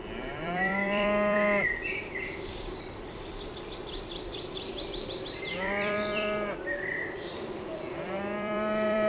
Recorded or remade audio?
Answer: remade